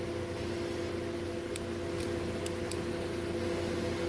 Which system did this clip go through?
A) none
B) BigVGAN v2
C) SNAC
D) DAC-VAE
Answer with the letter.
A